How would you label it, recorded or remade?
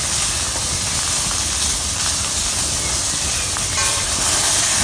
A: recorded